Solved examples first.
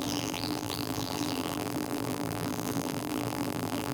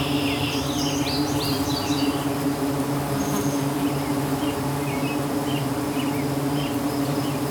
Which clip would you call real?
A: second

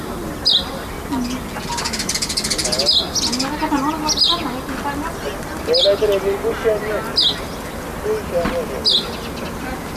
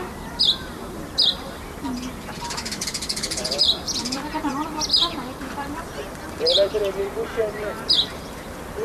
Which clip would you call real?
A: first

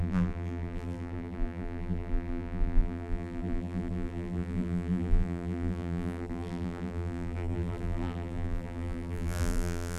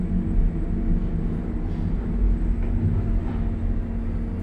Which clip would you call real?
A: second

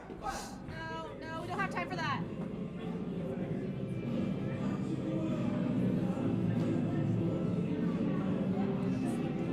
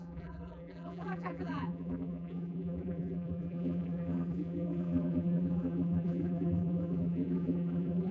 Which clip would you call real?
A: first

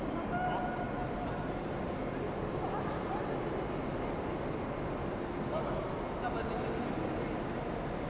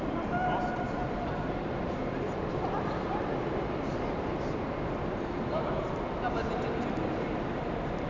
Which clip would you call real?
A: first